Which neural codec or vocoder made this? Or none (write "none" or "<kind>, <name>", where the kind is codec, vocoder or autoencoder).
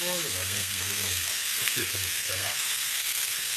codec, SNAC